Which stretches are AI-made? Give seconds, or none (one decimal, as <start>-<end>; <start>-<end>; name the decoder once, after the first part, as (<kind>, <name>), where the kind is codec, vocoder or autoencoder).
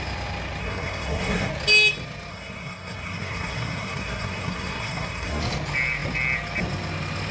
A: 0.6-1.5 (codec, SNAC); 2.3-5.4